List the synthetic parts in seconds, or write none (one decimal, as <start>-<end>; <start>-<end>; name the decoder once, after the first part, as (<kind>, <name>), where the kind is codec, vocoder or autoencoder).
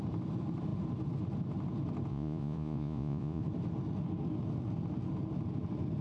2.1-3.4 (vocoder, Vocos)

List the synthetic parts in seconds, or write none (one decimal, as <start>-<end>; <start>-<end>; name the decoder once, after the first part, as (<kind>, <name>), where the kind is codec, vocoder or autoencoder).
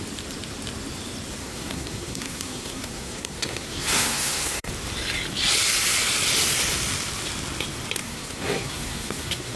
1.4-4.7 (codec, SNAC); 8.0-9.6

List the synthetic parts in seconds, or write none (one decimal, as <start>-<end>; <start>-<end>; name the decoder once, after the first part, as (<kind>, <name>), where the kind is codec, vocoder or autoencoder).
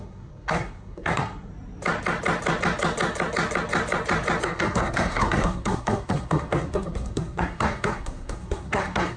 0.0-1.5 (codec, SNAC); 4.4-9.2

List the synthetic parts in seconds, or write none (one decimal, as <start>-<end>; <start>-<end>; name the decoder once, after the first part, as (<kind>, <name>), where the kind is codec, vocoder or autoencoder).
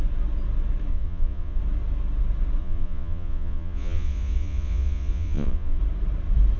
0.9-1.6 (vocoder, Vocos); 2.6-5.8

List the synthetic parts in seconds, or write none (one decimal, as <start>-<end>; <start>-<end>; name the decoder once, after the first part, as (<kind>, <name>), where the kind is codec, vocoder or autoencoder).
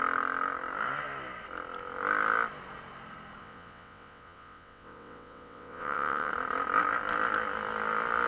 3.4-6.3 (vocoder, WaveNeXt)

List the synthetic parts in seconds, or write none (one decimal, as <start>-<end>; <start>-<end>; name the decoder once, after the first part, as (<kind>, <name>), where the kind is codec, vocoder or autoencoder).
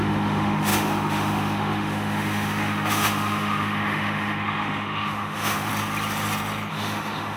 0.0-5.7 (autoencoder, DAC-VAE); 6.7-7.4